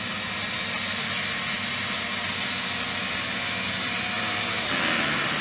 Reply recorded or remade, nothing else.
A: recorded